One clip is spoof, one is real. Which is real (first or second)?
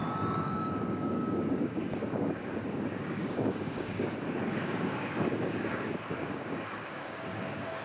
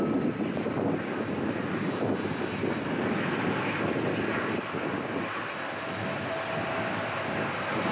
second